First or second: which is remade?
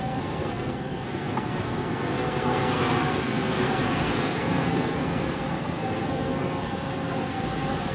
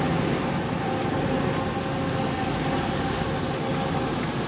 first